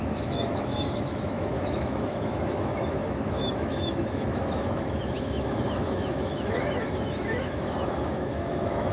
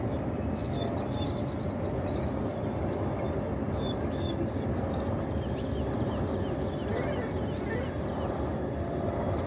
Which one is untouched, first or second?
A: second